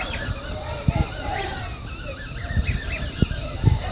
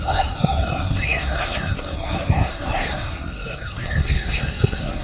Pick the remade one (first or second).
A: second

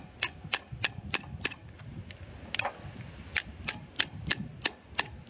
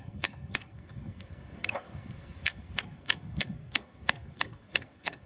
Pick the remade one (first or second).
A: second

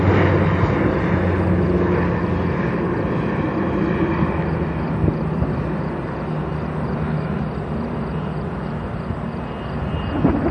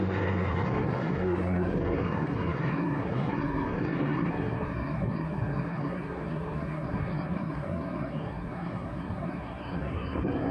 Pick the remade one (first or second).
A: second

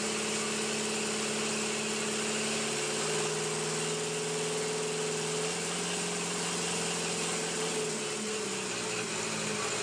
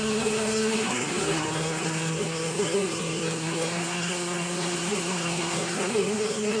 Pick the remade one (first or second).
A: second